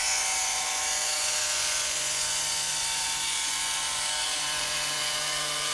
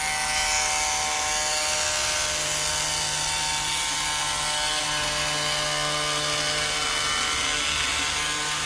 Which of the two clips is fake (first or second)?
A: first